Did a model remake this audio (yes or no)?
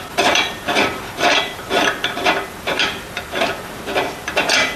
yes